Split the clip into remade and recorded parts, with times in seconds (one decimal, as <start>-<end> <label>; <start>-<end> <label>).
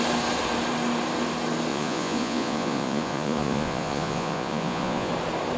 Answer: 0.0-1.7 recorded; 1.7-5.1 remade; 5.1-5.6 recorded